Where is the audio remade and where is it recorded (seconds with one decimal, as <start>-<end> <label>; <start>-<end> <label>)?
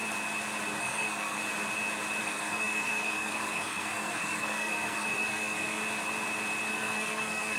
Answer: 0.0-0.8 recorded; 0.8-1.4 remade; 1.4-2.2 recorded; 2.2-5.8 remade; 5.8-6.7 recorded; 6.7-7.6 remade